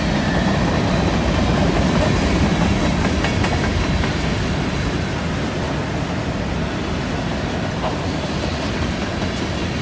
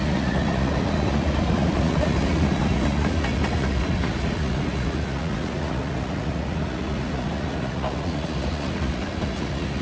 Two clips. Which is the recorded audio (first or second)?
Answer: first